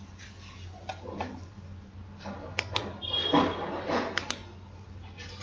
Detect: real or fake real